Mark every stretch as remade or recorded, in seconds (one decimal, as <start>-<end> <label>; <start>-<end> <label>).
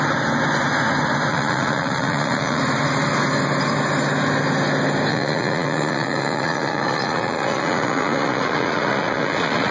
0.0-1.3 recorded; 1.3-2.6 remade; 2.6-5.1 recorded; 5.1-9.7 remade